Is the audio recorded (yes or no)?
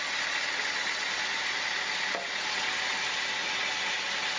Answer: yes